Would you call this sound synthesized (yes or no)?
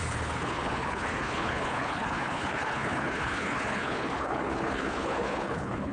yes